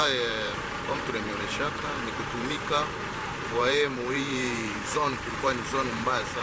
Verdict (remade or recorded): remade